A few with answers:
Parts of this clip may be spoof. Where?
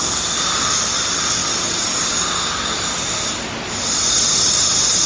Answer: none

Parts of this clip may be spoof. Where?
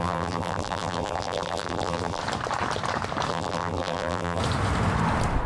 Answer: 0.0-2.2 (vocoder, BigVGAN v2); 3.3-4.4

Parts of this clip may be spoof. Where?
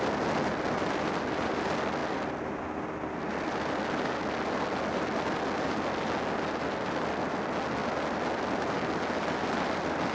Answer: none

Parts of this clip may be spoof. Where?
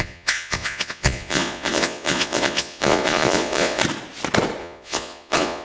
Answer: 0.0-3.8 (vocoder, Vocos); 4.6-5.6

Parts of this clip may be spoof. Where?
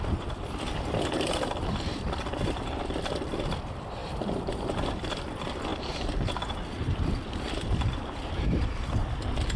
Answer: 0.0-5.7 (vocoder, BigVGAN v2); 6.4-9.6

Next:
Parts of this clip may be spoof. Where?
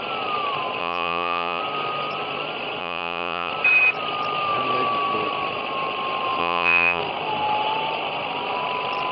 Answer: 0.8-1.6 (vocoder, Vocos); 2.8-3.5; 6.4-7.0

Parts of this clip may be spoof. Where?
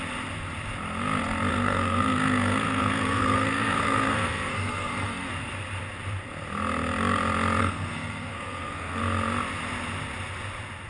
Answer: 1.5-5.3 (codec, SNAC); 7.6-9.0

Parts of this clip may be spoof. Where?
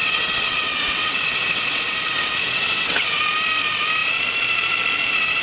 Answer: 0.0-3.2 (vocoder, WaveNeXt)